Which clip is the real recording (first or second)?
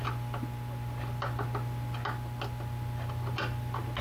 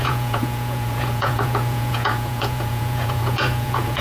first